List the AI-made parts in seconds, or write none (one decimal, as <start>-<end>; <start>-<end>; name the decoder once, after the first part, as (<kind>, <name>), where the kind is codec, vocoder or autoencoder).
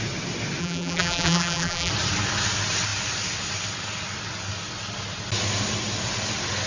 0.6-1.9 (vocoder, BigVGAN v2)